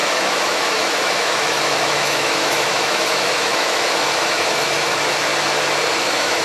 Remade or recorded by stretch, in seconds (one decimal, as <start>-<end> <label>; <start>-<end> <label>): 0.0-5.3 remade; 5.3-6.0 recorded; 6.0-6.4 remade